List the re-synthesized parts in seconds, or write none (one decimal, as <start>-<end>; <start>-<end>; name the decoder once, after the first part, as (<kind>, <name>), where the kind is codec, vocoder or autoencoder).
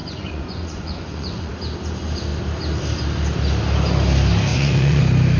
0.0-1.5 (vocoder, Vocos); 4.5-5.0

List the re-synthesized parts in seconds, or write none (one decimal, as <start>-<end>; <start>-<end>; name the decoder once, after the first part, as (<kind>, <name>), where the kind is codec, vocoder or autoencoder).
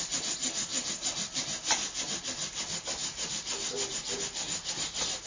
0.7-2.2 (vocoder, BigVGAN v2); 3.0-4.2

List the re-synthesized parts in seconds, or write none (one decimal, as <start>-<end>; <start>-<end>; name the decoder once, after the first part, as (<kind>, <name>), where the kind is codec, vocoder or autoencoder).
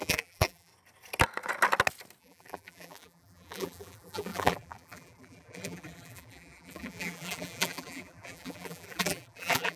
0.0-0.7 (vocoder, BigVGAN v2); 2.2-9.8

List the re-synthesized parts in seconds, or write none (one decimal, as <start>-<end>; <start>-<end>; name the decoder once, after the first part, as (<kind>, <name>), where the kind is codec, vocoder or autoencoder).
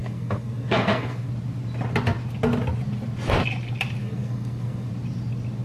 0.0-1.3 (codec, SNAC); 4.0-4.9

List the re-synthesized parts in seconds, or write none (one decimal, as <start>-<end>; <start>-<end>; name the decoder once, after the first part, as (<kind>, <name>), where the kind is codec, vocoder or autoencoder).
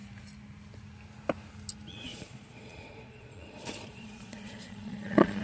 1.9-5.4 (vocoder, Vocos)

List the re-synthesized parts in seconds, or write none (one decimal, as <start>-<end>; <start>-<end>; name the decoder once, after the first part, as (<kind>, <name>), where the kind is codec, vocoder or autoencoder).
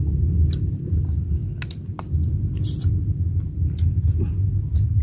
none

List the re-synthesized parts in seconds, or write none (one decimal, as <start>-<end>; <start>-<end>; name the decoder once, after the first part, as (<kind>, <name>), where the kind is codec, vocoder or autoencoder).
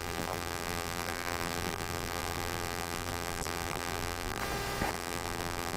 0.0-4.4 (vocoder, BigVGAN v2); 4.9-5.8